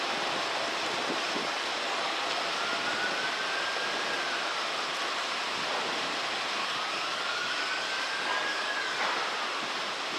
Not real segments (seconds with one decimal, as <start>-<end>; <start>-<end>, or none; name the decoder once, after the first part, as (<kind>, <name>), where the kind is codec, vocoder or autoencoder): 1.4-2.2 (codec, DAC); 6.6-9.0